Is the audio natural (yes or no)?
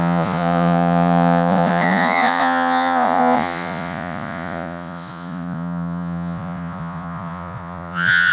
no